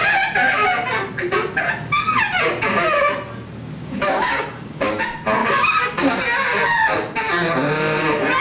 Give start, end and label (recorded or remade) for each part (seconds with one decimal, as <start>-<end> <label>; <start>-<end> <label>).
0.0-3.8 recorded; 3.8-5.0 remade; 5.0-5.4 recorded; 5.4-6.2 remade; 6.2-8.4 recorded